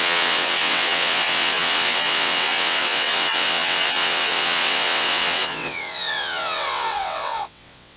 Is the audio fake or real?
fake